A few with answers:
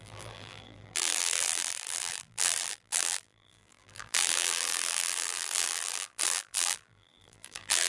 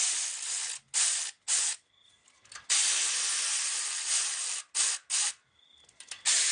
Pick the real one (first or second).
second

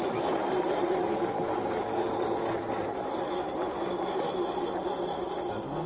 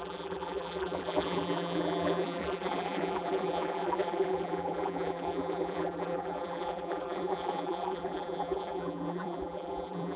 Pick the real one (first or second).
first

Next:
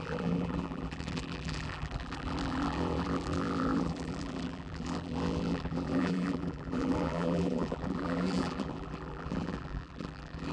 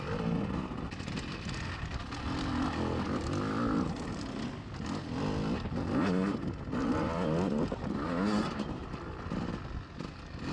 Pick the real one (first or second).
second